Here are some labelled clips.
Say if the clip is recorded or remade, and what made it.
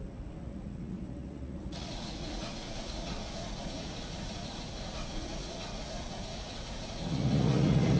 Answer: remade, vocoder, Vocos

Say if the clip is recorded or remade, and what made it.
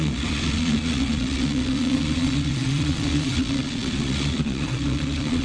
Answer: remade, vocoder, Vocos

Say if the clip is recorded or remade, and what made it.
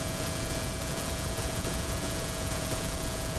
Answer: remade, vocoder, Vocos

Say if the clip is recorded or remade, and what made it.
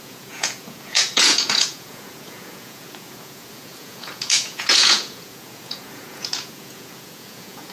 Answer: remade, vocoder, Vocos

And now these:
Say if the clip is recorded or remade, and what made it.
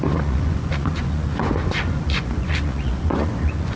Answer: remade, vocoder, Vocos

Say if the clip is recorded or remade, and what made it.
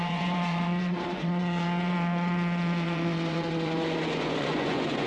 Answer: remade, vocoder, Vocos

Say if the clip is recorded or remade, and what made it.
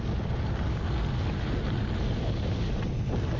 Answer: recorded